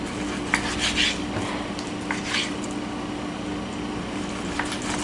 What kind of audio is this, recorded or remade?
recorded